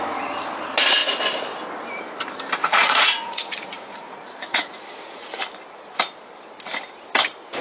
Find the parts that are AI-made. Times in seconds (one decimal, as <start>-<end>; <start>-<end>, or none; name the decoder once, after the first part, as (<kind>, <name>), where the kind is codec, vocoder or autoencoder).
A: 2.6-5.4 (vocoder, Vocos)